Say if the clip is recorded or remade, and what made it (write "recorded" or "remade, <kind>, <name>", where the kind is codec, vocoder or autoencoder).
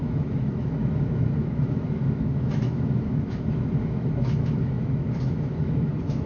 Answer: remade, autoencoder, DAC-VAE